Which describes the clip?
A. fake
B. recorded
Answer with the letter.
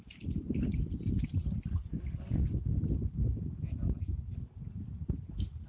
B